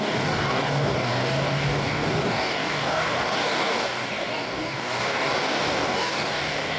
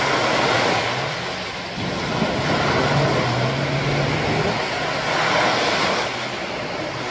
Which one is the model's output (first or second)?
first